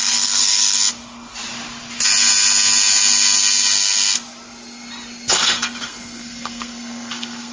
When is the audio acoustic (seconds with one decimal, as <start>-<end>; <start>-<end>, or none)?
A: 0.8-5.3